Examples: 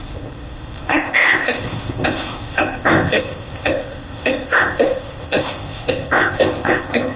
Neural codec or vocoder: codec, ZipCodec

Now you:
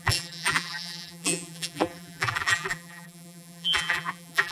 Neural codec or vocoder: vocoder, BigVGAN v2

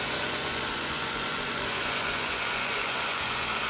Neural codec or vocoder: vocoder, Vocos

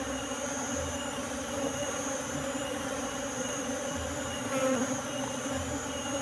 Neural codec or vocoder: vocoder, BigVGAN v2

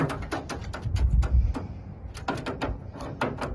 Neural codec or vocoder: none